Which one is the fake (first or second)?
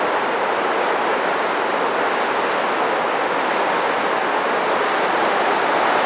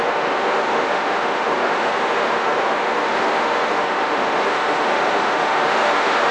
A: second